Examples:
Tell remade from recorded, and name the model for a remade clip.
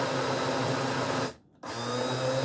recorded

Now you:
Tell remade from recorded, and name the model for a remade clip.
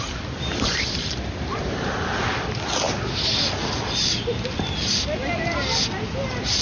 recorded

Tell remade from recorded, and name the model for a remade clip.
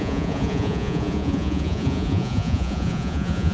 remade, vocoder, Vocos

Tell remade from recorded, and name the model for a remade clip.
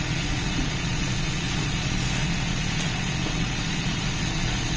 remade, vocoder, Vocos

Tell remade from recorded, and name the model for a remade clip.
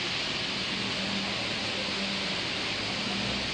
recorded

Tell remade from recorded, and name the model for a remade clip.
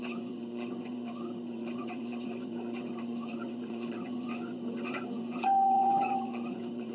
remade, vocoder, Vocos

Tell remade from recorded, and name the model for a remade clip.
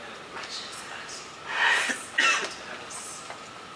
recorded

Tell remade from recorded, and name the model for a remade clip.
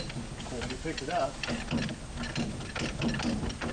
recorded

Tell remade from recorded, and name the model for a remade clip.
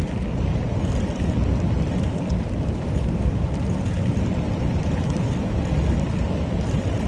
recorded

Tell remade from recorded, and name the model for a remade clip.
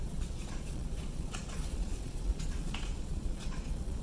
remade, vocoder, Vocos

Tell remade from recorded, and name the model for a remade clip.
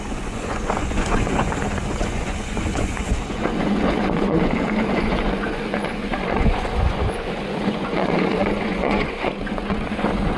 remade, vocoder, Vocos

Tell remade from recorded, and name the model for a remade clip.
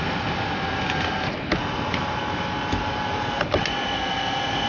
recorded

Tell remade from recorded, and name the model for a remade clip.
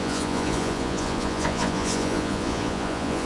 remade, vocoder, Vocos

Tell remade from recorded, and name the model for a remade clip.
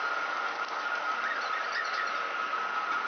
recorded